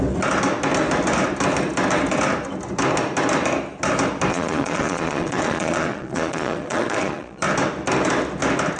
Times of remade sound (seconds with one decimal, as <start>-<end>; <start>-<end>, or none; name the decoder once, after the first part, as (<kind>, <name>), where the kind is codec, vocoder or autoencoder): 4.3-7.4 (vocoder, Vocos)